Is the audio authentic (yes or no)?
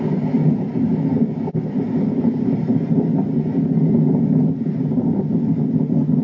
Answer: yes